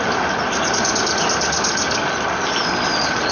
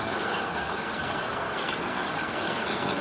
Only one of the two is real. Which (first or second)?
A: first